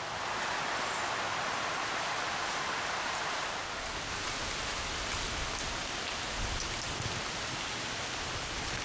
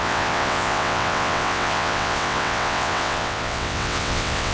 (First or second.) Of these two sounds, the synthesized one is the second